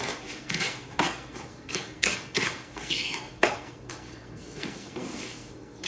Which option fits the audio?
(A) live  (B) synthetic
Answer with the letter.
B